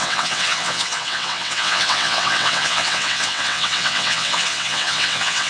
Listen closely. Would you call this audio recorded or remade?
remade